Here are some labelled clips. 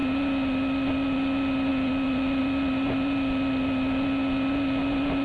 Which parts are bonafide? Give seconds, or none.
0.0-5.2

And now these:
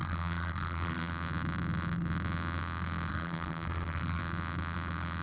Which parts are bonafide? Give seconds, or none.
1.1-3.1; 4.2-5.2